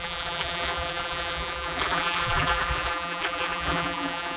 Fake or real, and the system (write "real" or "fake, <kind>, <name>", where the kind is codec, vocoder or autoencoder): fake, vocoder, BigVGAN v2